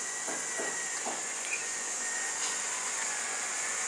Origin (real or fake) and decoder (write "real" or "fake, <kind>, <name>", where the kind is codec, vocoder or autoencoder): fake, vocoder, Vocos